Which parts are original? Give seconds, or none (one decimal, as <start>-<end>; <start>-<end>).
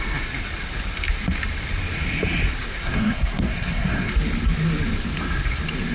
0.0-2.8; 4.1-5.9